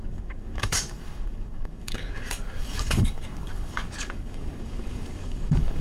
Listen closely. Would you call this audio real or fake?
fake